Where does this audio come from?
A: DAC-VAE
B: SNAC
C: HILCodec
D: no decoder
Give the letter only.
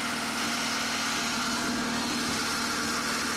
D